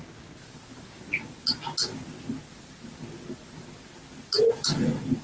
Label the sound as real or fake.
real